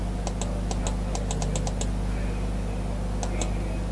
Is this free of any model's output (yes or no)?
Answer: yes